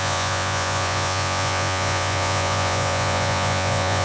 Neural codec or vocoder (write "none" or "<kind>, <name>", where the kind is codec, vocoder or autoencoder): vocoder, Vocos